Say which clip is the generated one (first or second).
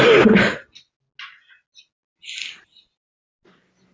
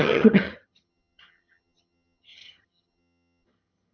second